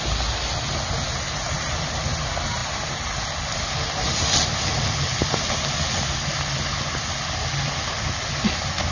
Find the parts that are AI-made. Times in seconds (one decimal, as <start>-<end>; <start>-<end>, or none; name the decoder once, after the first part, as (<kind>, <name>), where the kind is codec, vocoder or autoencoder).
none